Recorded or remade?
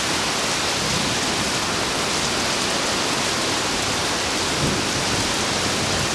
recorded